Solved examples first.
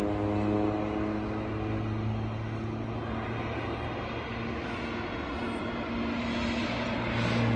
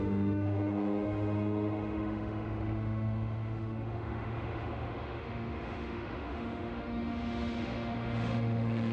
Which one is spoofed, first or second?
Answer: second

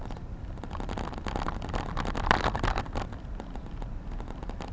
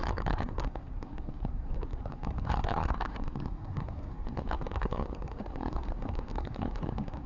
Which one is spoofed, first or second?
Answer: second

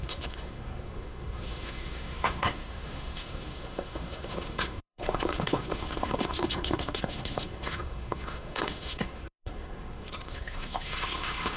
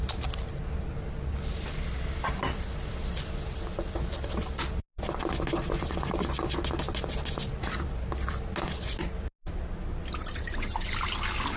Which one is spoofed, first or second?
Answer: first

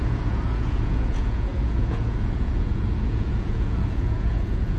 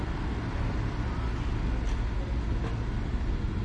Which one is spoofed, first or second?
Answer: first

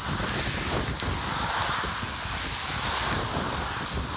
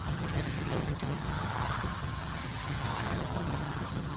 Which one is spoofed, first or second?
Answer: second